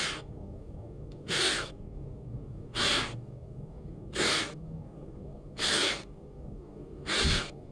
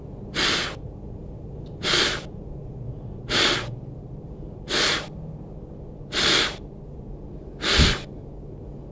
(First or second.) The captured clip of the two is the second